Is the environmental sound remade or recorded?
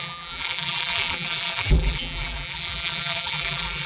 remade